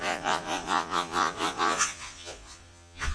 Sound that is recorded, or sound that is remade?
remade